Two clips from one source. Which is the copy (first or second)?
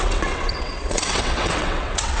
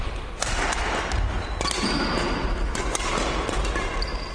first